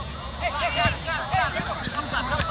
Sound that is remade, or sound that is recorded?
recorded